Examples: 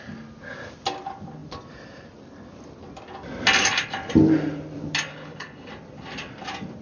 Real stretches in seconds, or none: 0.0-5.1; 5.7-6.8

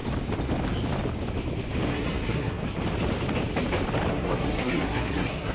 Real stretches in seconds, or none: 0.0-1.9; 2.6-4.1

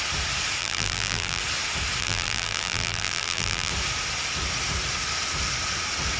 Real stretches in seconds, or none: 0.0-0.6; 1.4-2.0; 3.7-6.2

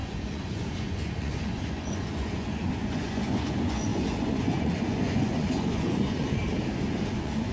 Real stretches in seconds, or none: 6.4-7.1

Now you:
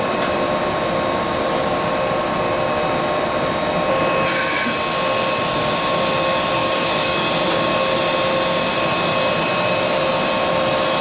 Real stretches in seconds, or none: 0.0-6.6; 7.3-11.0

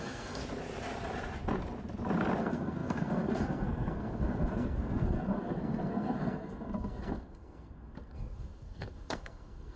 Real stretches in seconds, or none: 0.4-2.4

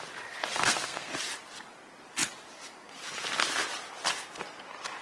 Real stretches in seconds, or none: 0.0-0.5; 1.1-5.0